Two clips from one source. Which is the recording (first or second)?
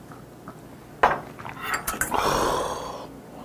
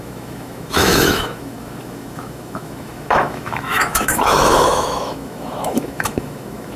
first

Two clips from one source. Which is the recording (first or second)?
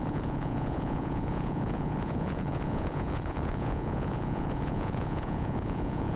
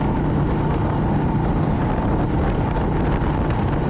second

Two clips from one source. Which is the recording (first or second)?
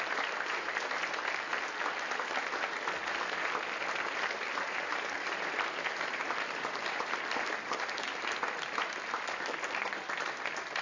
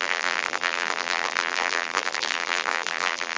first